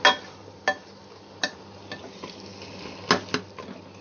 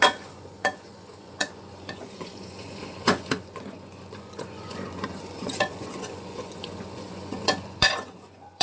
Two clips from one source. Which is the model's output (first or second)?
second